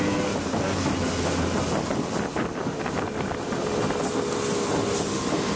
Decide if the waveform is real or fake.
real